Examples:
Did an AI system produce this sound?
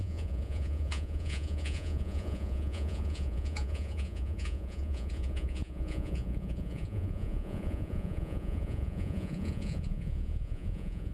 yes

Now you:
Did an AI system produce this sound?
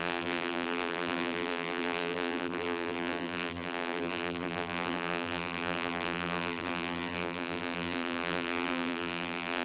yes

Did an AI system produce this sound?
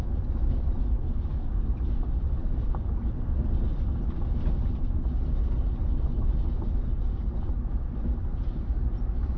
no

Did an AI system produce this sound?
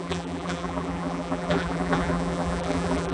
yes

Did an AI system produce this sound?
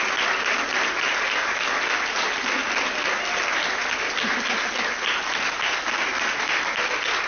no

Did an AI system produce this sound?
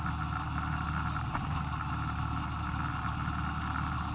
no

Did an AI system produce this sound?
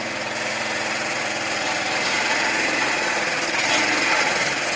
yes